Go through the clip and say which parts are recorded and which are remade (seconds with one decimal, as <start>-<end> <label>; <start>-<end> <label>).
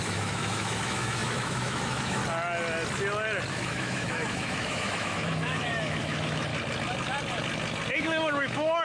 0.0-2.2 remade; 2.2-3.5 recorded; 3.5-6.5 remade; 6.5-7.9 recorded; 7.9-8.8 remade